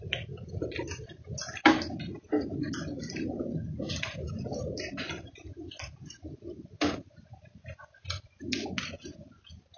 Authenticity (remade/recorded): remade